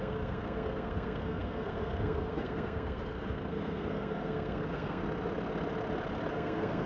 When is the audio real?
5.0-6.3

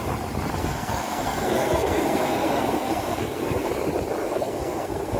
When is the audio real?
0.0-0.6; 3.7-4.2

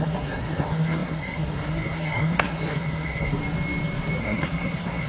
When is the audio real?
3.4-4.2

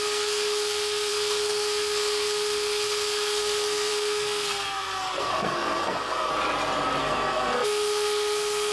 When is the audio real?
6.3-7.0

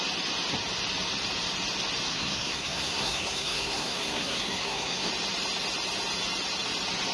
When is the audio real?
0.0-2.1; 5.1-7.1

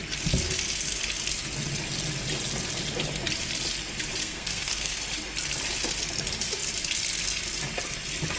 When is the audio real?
0.0-4.2; 5.0-8.4